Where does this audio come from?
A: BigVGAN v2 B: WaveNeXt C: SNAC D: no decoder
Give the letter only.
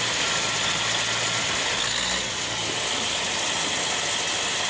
D